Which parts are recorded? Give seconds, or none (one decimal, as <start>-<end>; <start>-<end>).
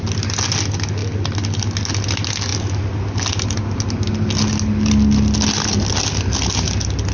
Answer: 0.0-7.1